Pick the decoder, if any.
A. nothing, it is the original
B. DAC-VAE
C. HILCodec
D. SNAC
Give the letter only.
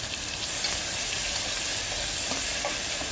A